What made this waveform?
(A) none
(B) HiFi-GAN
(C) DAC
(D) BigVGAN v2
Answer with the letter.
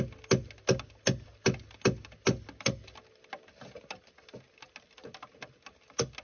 A